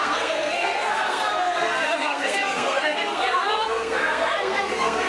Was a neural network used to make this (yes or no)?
yes